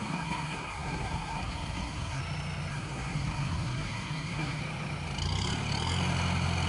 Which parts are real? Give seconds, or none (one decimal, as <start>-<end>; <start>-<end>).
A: 2.2-2.7; 4.6-6.7